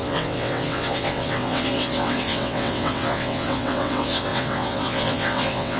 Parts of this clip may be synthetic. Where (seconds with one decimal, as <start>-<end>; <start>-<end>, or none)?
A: 0.0-5.8